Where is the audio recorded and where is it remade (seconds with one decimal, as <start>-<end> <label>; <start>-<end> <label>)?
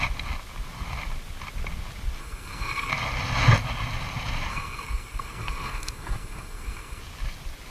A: 0.0-2.2 recorded; 2.2-2.9 remade; 2.9-4.5 recorded; 4.5-7.0 remade; 7.0-7.7 recorded